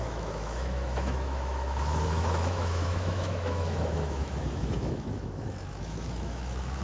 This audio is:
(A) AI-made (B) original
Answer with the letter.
A